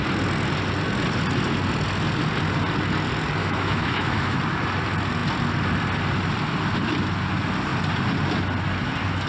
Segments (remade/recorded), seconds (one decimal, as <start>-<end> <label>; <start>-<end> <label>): 0.0-3.4 recorded; 3.4-4.4 remade; 4.4-9.3 recorded